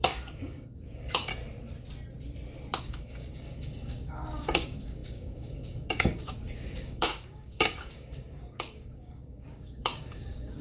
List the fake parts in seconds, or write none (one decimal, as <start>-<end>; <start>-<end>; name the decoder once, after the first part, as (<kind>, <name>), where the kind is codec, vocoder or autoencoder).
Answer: 0.0-1.3 (codec, DAC); 2.8-10.6